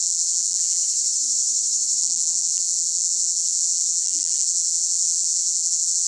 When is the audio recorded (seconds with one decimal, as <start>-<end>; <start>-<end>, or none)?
0.8-2.0